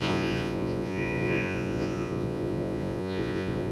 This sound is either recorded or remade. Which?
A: remade